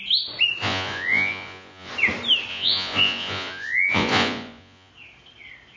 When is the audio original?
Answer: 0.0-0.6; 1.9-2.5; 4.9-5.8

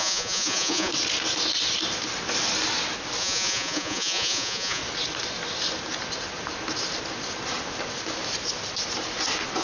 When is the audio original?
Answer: 0.9-3.2; 4.8-9.6

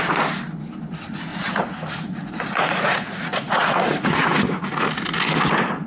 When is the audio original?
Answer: 0.0-1.3; 4.8-5.9

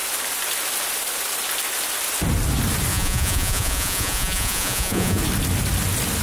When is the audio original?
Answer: 0.0-2.9; 5.2-6.2

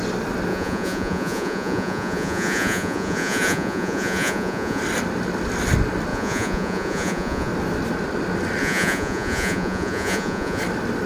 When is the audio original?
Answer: 0.0-0.5; 4.8-6.1; 7.5-8.6; 10.6-11.1

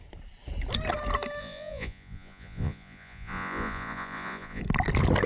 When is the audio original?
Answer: 0.0-1.4; 4.6-5.3